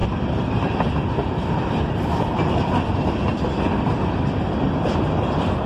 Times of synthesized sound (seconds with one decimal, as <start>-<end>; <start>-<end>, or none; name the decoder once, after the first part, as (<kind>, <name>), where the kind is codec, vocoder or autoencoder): 0.0-0.9 (vocoder, BigVGAN v2)